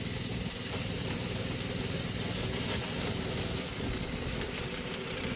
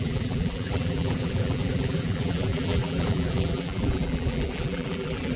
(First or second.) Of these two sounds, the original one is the first